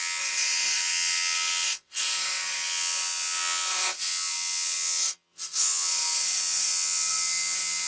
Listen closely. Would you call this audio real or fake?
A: fake